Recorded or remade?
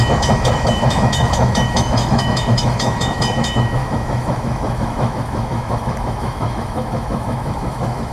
remade